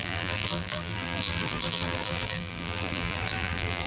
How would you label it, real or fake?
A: fake